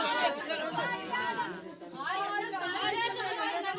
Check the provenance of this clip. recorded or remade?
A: recorded